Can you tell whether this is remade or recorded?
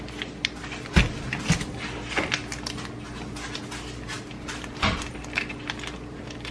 recorded